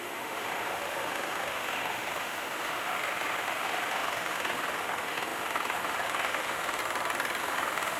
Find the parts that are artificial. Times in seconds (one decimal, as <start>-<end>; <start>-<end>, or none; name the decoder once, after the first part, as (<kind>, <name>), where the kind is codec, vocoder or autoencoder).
0.0-6.8 (autoencoder, DAC-VAE); 7.4-8.0